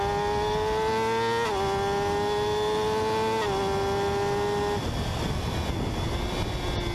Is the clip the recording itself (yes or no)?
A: yes